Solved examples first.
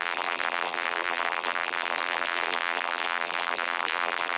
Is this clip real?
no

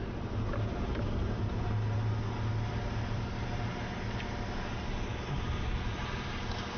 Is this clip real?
yes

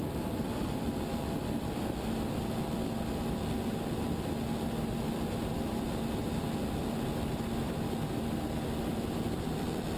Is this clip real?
yes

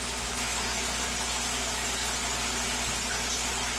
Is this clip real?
yes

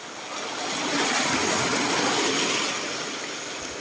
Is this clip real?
yes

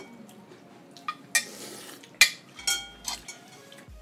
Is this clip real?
yes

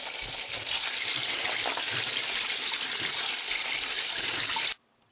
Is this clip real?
no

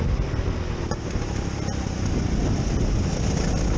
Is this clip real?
yes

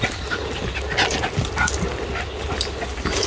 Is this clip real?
yes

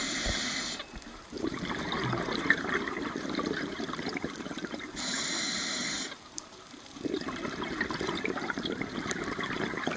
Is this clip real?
no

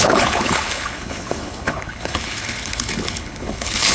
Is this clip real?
no